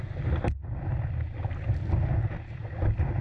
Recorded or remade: recorded